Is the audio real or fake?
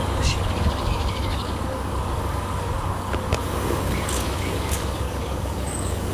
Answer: fake